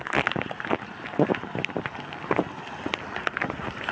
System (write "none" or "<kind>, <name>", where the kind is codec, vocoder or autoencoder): none